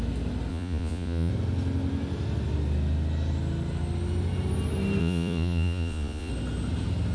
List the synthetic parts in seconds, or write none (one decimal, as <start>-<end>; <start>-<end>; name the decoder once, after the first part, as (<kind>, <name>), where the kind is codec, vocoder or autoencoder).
0.5-1.3 (vocoder, Vocos); 5.0-6.3